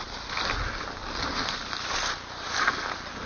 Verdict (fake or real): real